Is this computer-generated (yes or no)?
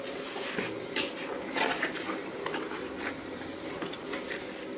no